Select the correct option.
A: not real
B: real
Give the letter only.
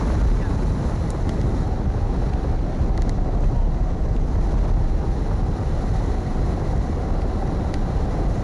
B